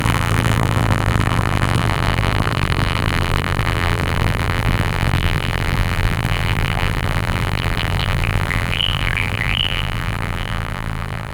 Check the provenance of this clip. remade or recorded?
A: remade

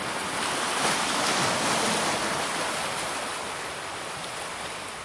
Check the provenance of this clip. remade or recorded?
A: recorded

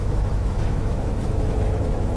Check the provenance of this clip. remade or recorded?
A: remade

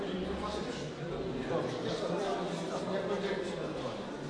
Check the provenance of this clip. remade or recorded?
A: recorded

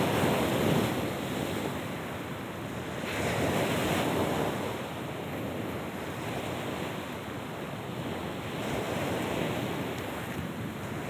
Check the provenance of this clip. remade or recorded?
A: recorded